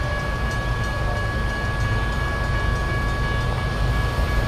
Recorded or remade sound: recorded